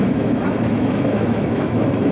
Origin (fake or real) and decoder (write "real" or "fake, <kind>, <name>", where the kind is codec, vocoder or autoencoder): fake, autoencoder, DAC-VAE